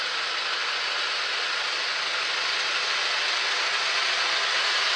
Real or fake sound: real